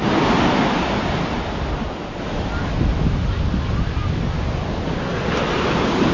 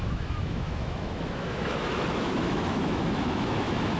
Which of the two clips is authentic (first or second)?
first